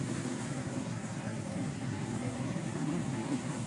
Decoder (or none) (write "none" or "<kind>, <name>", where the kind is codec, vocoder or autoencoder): codec, SNAC